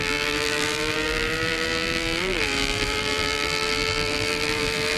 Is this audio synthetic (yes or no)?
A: yes